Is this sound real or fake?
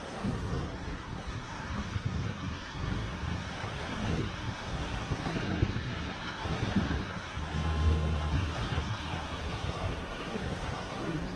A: fake